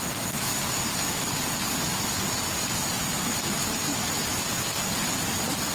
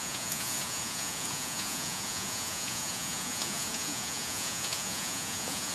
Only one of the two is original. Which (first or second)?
first